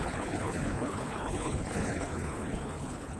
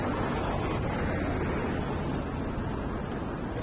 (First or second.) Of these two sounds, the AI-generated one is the first